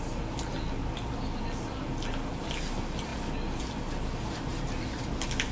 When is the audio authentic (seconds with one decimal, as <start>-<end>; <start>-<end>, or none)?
0.0-4.5; 5.1-5.5